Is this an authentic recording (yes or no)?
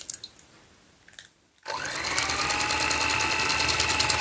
yes